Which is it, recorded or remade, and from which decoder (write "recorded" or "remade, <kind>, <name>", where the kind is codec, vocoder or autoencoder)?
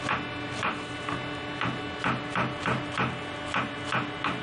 recorded